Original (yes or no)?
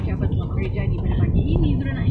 yes